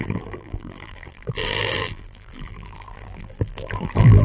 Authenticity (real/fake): fake